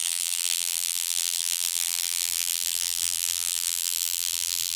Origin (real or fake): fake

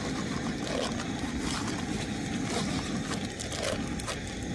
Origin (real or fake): real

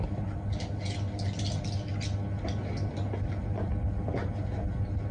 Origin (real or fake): real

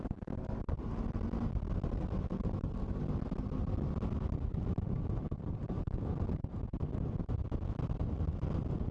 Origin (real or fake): real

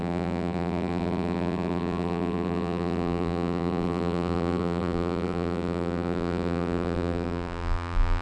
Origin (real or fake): fake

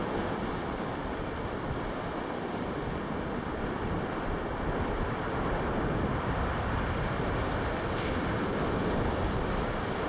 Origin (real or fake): fake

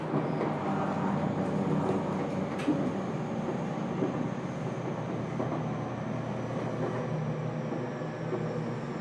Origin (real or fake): real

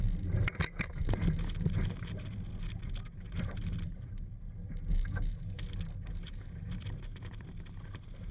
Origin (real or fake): real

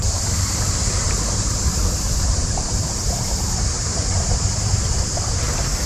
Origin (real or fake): fake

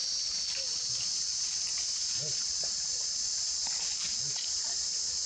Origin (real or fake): fake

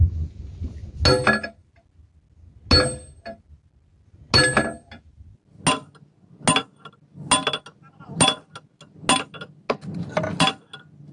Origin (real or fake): real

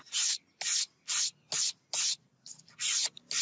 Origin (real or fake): real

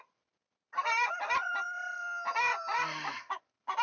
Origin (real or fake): fake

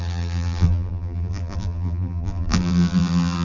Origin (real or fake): fake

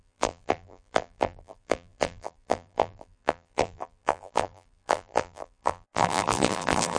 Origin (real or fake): fake